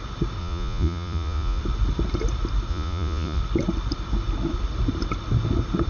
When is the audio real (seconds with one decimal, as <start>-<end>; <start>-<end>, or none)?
0.0-0.4; 1.6-2.7; 3.4-5.9